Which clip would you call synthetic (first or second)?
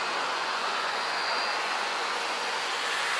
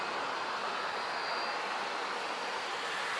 first